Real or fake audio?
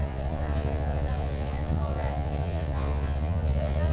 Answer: fake